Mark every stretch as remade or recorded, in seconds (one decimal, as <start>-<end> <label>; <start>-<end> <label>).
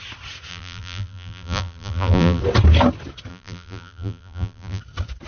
0.0-0.5 recorded; 0.5-2.4 remade; 2.4-3.3 recorded; 3.3-4.8 remade; 4.8-5.3 recorded